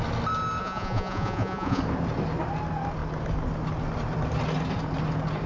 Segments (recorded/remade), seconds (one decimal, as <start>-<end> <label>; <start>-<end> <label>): 0.0-0.6 recorded; 0.6-1.8 remade; 1.8-5.5 recorded